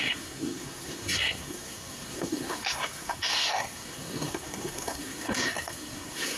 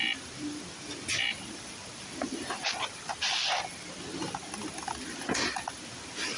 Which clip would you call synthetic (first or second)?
first